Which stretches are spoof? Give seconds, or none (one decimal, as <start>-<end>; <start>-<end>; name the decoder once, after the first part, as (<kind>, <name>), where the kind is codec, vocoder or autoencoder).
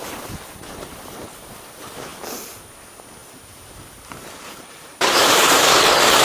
3.2-5.4 (vocoder, BigVGAN v2)